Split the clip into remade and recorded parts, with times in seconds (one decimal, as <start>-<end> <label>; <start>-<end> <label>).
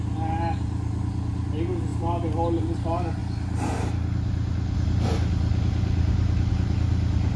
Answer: 0.0-7.4 recorded